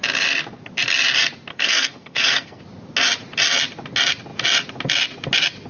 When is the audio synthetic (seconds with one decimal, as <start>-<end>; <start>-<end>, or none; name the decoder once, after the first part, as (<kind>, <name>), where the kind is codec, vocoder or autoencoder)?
1.5-2.6 (codec, SNAC)